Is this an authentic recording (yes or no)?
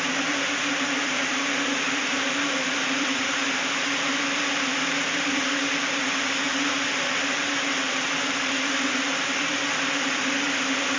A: no